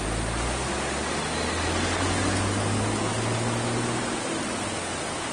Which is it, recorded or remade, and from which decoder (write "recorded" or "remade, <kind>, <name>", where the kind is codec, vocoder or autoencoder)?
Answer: recorded